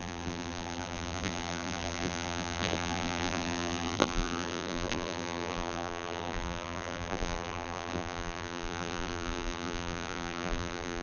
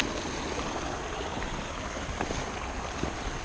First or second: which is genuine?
second